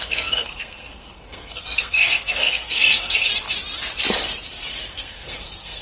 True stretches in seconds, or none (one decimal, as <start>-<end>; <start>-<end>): 3.3-4.9